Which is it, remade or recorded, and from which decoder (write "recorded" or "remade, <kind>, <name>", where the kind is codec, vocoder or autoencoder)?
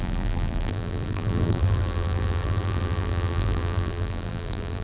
remade, vocoder, BigVGAN v2